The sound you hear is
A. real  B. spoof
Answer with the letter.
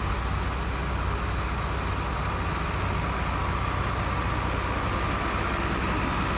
A